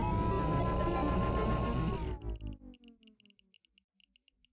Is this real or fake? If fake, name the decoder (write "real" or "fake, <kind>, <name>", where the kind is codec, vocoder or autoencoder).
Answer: real